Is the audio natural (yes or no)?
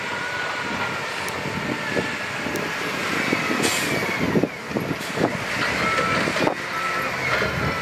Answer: yes